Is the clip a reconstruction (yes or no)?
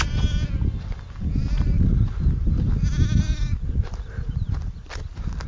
no